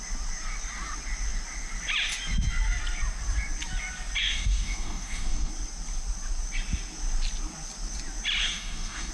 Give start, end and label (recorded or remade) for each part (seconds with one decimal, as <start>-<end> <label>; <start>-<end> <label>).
0.0-4.2 recorded; 4.2-5.5 remade; 5.5-8.4 recorded; 8.4-9.1 remade